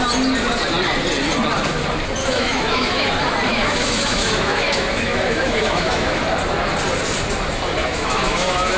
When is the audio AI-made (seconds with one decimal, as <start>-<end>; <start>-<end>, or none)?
2.2-3.1; 3.5-6.2; 7.8-8.8